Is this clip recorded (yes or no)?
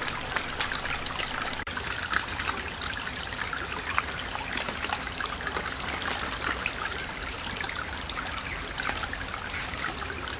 yes